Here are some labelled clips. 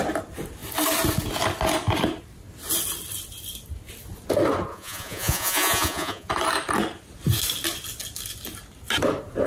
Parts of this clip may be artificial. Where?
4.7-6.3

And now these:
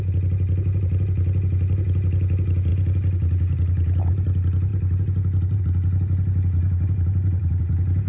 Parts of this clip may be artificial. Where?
2.7-4.1; 4.7-5.6; 6.6-7.6

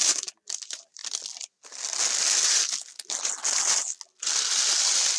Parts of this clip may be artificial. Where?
none

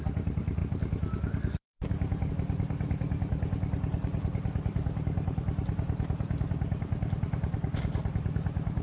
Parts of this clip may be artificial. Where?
0.0-8.8

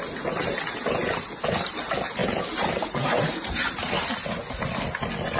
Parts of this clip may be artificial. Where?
2.2-3.9

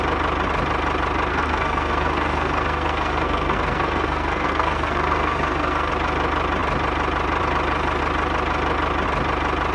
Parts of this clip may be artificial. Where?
1.3-5.9

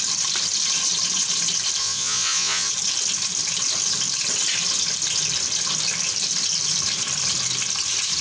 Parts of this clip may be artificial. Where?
1.8-2.7